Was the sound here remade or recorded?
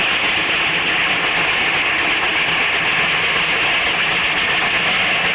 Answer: recorded